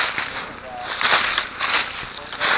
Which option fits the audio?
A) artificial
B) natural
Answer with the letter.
B